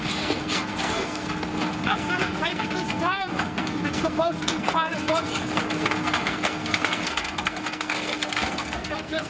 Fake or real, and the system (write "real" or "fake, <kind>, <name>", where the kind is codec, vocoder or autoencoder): fake, codec, SNAC